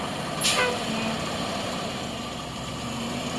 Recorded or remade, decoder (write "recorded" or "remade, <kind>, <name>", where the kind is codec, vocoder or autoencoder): recorded